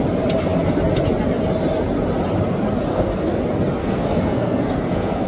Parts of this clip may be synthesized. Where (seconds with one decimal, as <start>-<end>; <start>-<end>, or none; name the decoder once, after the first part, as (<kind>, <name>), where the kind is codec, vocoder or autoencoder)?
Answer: 2.9-3.4 (codec, SNAC); 3.8-5.3